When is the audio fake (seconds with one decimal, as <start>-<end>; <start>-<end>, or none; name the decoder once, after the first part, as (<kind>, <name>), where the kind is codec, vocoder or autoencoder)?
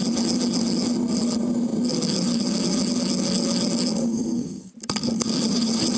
4.1-4.7 (codec, SNAC)